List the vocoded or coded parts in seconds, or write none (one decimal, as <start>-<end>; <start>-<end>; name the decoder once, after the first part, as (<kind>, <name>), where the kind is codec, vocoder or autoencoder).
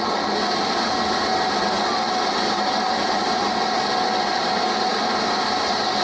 none